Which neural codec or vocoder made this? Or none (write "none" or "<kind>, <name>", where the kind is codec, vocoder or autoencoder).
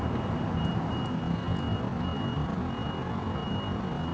none